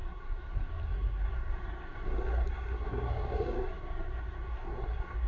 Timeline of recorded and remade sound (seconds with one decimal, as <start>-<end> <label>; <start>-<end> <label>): 0.0-5.3 remade